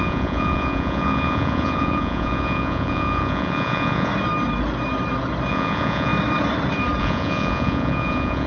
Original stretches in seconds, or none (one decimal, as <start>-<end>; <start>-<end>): 4.1-5.5; 6.1-7.0